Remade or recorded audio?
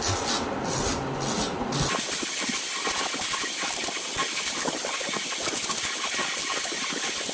recorded